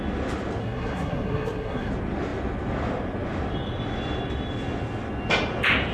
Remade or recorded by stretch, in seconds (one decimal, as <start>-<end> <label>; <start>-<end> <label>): 0.0-0.6 recorded; 0.6-1.9 remade; 1.9-5.9 recorded